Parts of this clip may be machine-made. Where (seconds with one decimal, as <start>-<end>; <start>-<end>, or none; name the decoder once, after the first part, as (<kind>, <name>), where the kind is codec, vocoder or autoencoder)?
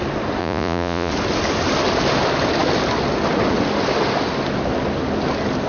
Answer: 0.4-1.1 (vocoder, Vocos)